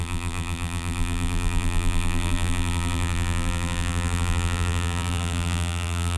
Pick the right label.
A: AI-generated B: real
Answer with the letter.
A